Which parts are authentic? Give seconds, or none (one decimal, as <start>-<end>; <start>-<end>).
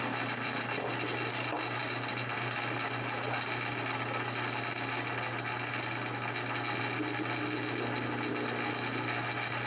0.0-9.7